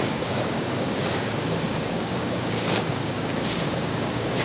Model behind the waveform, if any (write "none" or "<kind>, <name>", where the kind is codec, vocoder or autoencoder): codec, DAC